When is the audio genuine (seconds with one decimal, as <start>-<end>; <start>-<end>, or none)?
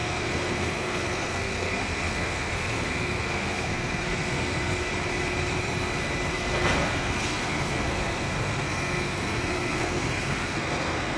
4.9-6.3